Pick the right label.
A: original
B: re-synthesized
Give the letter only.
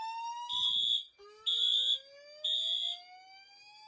A